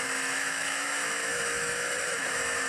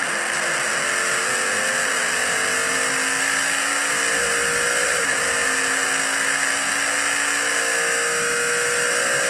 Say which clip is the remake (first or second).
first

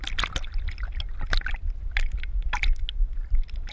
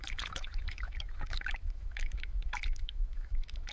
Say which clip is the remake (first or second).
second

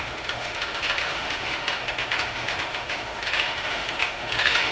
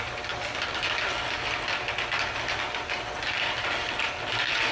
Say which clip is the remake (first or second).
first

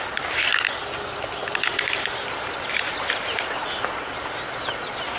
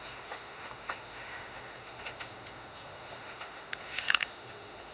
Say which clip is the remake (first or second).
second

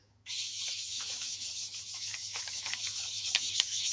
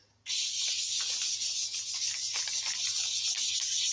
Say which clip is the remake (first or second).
first